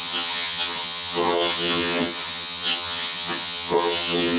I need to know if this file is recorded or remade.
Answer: remade